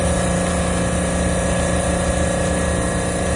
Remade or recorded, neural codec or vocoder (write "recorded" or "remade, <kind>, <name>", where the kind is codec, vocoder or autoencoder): recorded